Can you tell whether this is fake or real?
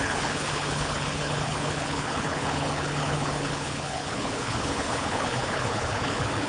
fake